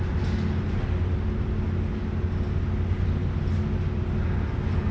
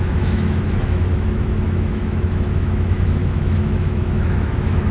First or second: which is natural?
first